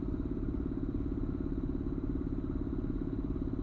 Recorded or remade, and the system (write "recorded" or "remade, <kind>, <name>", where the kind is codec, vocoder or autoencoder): recorded